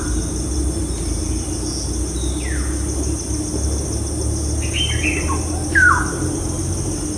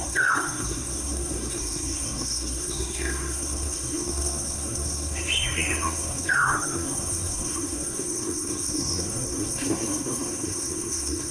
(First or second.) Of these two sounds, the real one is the first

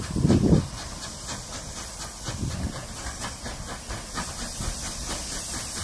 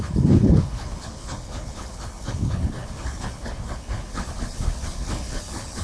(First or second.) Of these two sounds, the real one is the first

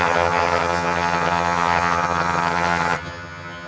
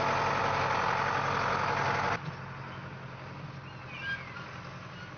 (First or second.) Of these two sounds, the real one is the second